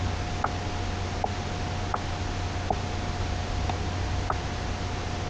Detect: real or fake real